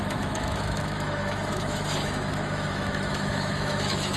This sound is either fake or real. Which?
fake